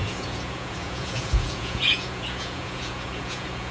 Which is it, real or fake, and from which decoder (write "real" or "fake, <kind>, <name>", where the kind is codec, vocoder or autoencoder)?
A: fake, vocoder, Vocos